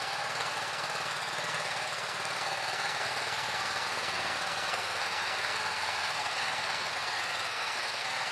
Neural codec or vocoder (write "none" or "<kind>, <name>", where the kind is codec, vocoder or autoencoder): codec, SNAC